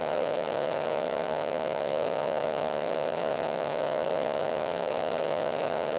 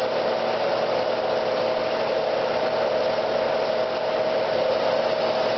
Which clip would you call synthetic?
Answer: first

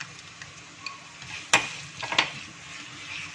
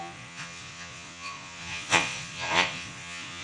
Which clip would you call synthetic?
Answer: second